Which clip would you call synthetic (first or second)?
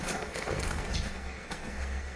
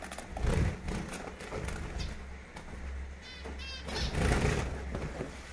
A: first